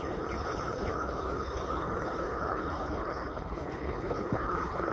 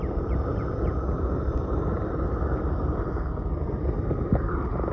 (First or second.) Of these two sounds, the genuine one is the second